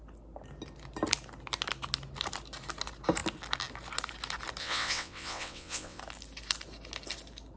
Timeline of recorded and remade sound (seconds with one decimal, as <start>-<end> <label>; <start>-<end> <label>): 0.0-4.6 recorded; 4.6-6.0 remade; 6.0-7.6 recorded